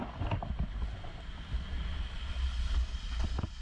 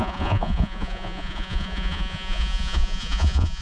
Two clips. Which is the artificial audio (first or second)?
second